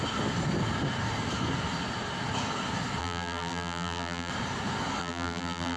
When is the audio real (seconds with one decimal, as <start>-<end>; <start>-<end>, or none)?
0.0-3.0; 4.3-5.0